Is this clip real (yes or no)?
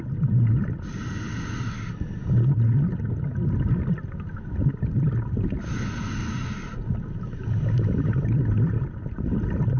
yes